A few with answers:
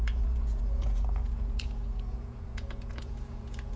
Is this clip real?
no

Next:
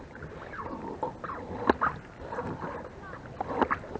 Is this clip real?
yes